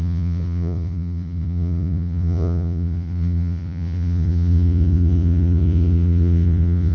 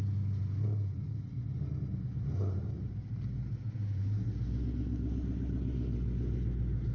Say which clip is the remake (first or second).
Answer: first